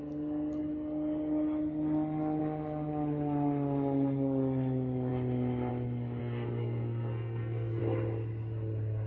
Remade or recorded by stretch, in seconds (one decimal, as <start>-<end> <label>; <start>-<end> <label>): 0.0-6.2 recorded; 6.2-7.8 remade; 7.8-9.1 recorded